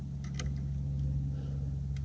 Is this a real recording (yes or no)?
yes